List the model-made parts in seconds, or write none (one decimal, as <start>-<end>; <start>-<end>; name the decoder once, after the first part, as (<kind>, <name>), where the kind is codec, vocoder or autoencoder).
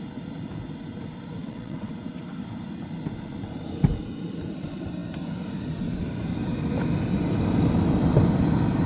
1.4-1.9 (vocoder, WaveNeXt)